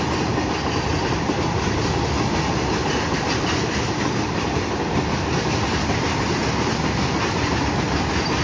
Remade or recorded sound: recorded